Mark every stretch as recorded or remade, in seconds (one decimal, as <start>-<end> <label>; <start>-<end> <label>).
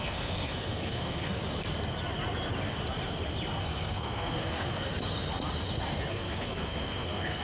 0.0-1.4 remade; 1.4-3.6 recorded; 3.6-4.9 remade; 4.9-6.1 recorded; 6.1-7.4 remade